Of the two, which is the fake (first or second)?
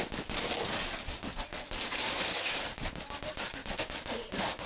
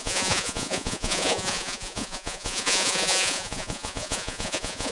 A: second